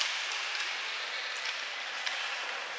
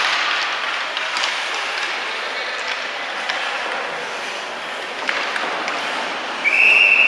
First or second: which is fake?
first